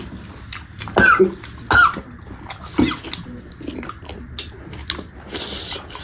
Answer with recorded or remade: recorded